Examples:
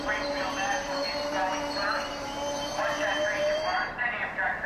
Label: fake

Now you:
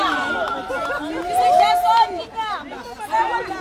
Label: real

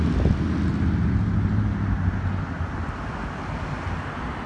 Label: real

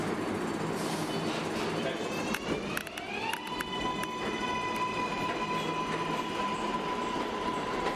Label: real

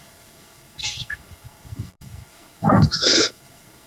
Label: fake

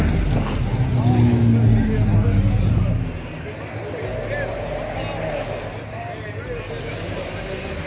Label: real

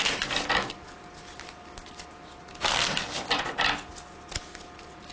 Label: real